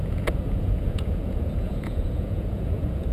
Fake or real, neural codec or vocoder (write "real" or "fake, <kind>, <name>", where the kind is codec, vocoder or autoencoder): fake, vocoder, Vocos